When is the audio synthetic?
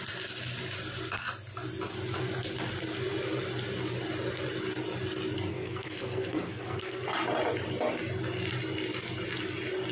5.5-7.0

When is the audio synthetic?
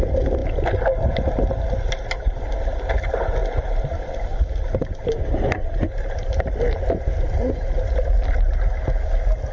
none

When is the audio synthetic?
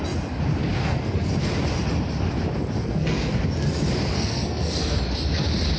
0.8-1.3; 2.8-3.4; 4.1-5.0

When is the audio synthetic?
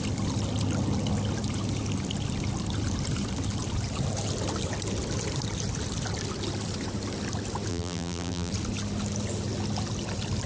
7.7-8.5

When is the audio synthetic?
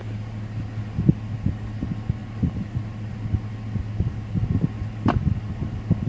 none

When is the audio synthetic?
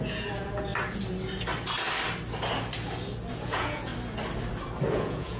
0.0-0.7; 3.3-3.9; 4.9-5.4